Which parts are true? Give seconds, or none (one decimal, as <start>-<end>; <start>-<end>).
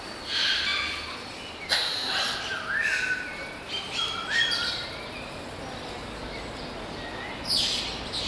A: 0.0-8.3